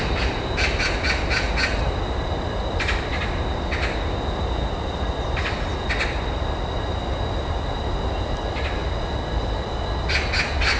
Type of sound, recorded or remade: recorded